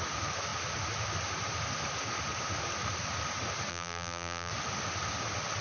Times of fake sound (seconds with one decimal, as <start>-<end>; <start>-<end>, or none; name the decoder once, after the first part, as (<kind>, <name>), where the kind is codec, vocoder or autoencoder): 3.7-4.5 (vocoder, BigVGAN v2)